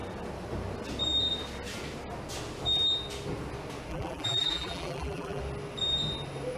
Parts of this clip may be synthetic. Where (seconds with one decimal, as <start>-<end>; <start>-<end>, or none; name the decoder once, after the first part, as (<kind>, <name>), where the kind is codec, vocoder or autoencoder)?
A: 3.9-5.4 (vocoder, BigVGAN v2)